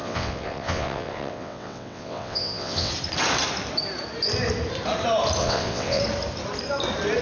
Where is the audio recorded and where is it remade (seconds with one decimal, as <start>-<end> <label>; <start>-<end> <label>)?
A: 0.0-2.9 remade; 2.9-5.4 recorded; 5.4-6.0 remade; 6.0-7.2 recorded